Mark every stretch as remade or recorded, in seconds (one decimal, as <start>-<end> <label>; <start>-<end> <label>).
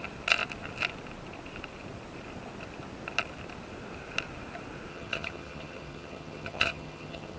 0.0-4.9 recorded; 4.9-7.4 remade